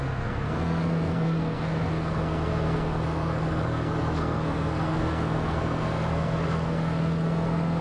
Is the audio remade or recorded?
remade